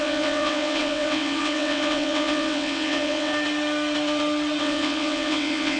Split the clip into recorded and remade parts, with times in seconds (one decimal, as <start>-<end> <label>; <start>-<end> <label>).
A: 0.0-3.3 remade; 3.3-4.6 recorded; 4.6-5.8 remade